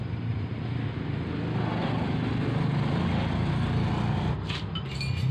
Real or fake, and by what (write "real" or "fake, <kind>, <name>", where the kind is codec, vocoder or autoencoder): real